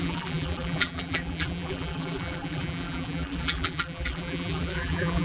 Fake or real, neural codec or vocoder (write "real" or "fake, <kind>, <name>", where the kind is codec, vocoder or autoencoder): fake, vocoder, BigVGAN v2